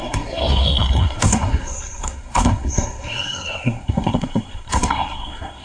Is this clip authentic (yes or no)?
no